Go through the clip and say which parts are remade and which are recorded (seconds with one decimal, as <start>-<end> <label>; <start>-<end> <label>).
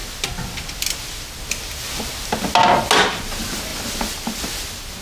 0.0-5.0 recorded